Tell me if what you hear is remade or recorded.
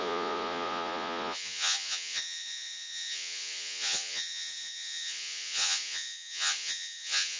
remade